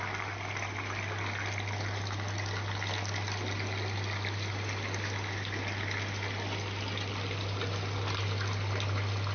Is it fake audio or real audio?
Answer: real